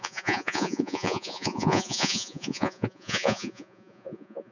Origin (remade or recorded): remade